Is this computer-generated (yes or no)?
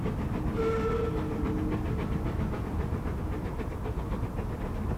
no